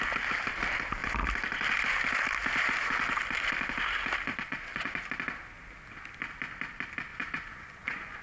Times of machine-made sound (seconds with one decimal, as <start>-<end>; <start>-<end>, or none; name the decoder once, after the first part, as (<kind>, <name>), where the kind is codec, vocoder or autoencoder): 4.3-5.1 (vocoder, Vocos); 7.1-8.2